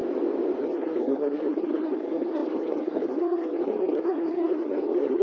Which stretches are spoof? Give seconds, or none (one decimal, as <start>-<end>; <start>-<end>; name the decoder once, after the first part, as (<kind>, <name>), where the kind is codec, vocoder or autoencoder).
0.6-5.2 (codec, SNAC)